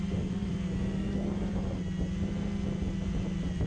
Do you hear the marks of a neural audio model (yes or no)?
no